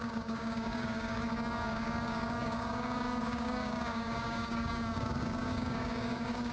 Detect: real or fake fake